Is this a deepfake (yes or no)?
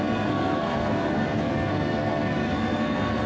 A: yes